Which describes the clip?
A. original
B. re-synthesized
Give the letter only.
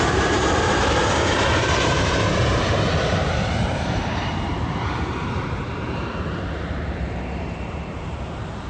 B